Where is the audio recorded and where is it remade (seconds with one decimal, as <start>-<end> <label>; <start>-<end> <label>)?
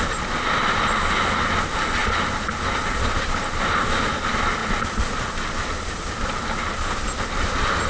0.0-7.9 recorded